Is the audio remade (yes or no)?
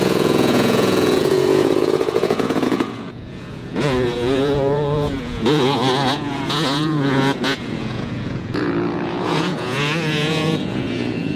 yes